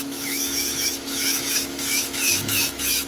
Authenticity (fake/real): fake